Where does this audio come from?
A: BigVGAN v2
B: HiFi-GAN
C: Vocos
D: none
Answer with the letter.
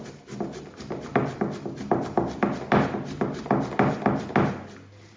D